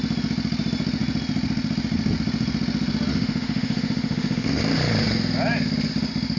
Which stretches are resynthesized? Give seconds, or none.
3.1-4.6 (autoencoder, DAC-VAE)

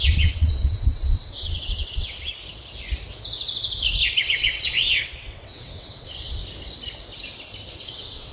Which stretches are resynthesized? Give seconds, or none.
0.0-2.3 (vocoder, WaveNeXt); 4.2-6.4; 7.7-8.3

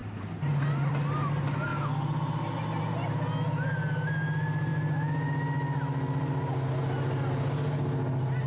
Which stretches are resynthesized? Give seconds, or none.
0.0-0.9 (vocoder, BigVGAN v2)

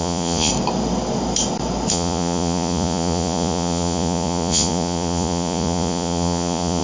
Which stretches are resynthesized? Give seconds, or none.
0.0-0.5 (vocoder, Vocos); 1.9-6.8